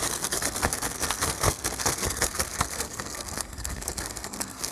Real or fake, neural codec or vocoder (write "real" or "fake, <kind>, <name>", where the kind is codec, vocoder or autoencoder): fake, codec, SNAC